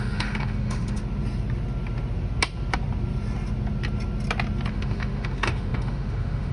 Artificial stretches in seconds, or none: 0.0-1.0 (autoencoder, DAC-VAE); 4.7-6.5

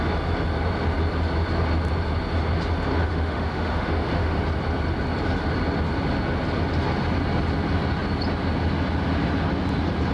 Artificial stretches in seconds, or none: 3.0-4.4 (autoencoder, DAC-VAE)